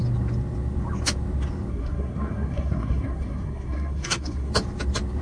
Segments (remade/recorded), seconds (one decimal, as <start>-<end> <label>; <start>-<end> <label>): 0.0-1.7 recorded; 1.7-4.5 remade; 4.5-5.2 recorded